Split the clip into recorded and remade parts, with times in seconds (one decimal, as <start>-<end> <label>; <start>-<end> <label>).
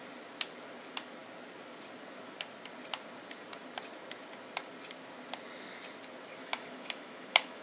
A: 0.0-6.4 recorded; 6.4-7.6 remade